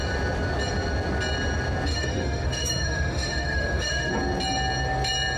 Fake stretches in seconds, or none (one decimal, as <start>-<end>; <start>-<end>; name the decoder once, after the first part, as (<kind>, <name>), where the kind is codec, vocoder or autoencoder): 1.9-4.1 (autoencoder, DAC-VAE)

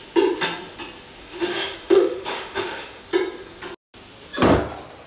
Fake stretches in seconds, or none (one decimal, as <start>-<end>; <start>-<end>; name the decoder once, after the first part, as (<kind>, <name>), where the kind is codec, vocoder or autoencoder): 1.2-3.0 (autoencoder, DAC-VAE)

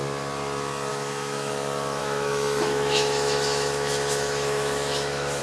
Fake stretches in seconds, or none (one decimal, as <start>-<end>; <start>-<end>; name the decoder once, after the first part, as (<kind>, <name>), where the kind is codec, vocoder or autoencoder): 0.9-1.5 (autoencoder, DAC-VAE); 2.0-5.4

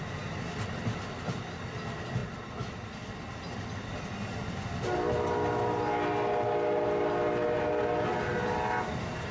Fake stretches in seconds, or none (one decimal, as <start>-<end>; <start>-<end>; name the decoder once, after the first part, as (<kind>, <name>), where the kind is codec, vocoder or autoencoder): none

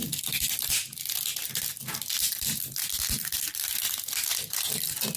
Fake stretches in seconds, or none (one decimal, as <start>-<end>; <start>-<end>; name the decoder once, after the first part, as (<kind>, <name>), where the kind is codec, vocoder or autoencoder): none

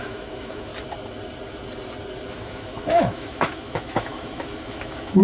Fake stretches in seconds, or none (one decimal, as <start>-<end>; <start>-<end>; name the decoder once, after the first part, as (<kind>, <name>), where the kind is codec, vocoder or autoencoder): 0.0-0.7 (autoencoder, DAC-VAE); 2.3-5.2

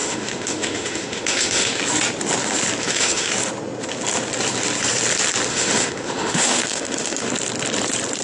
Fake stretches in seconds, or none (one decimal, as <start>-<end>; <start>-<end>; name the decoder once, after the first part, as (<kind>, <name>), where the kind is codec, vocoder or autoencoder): 0.0-1.8 (autoencoder, DAC-VAE); 2.8-3.3; 5.5-7.3

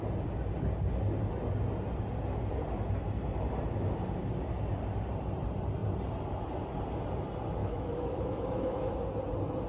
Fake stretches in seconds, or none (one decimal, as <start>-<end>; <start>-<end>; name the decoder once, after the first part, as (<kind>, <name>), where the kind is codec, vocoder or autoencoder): 7.6-8.9 (autoencoder, DAC-VAE)